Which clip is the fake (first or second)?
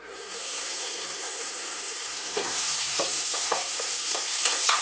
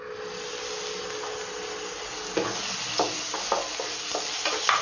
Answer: first